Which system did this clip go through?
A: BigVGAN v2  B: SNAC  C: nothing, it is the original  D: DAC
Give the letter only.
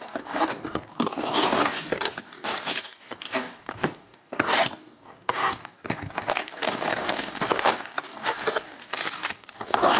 D